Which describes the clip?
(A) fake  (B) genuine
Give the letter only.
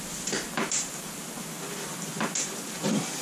A